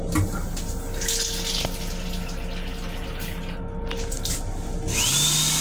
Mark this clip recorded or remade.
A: recorded